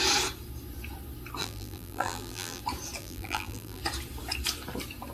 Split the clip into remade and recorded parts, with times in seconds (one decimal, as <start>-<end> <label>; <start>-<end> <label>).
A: 0.0-1.4 recorded; 1.4-2.6 remade; 2.6-3.0 recorded; 3.0-3.8 remade; 3.8-5.1 recorded